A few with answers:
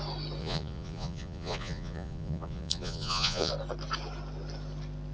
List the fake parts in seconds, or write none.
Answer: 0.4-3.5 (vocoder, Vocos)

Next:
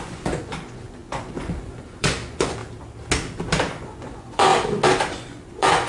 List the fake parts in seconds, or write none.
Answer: 0.0-2.6 (vocoder, Vocos); 3.7-4.5; 5.1-5.9

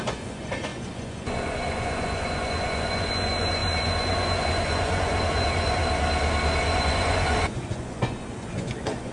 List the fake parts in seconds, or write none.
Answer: 0.0-5.8 (vocoder, Vocos); 6.6-9.1

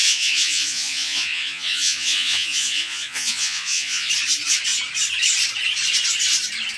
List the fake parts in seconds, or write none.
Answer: 0.0-4.1 (vocoder, Vocos)

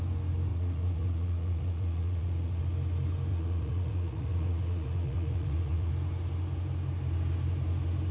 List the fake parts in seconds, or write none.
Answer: 0.5-2.6 (vocoder, Vocos); 3.3-5.9

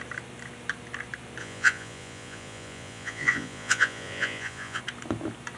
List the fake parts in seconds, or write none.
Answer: 1.4-4.8 (vocoder, Vocos)